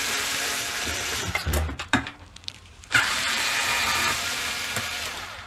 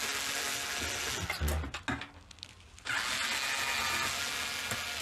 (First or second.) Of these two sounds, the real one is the second